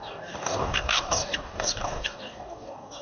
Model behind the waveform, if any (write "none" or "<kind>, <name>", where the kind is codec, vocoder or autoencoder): codec, DAC